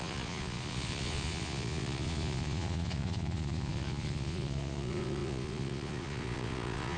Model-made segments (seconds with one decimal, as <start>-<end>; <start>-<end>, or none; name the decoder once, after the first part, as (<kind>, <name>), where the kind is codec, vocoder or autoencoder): 0.0-7.0 (vocoder, Vocos)